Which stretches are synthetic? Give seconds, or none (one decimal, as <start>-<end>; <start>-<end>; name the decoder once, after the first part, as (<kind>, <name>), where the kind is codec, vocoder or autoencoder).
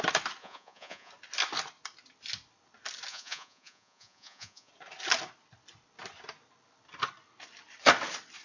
0.4-1.1 (vocoder, Vocos); 3.1-4.7